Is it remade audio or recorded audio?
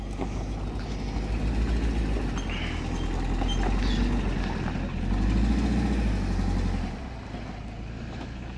recorded